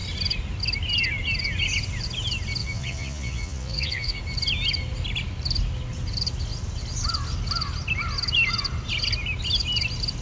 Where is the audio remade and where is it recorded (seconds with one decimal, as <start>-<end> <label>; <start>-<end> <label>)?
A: 0.0-2.6 recorded; 2.6-4.2 remade; 4.2-10.2 recorded